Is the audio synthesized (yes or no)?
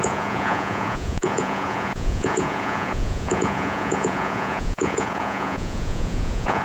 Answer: yes